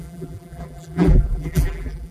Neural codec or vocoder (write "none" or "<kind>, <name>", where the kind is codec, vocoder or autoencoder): vocoder, BigVGAN v2